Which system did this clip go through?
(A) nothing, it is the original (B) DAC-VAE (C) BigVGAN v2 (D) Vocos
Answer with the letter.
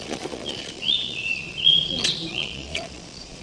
D